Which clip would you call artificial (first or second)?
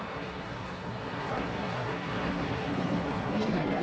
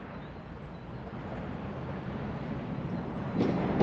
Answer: first